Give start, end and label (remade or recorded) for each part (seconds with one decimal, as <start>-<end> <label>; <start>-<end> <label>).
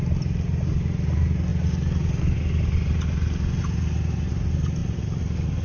0.0-5.6 recorded